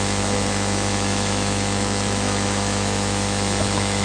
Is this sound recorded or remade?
remade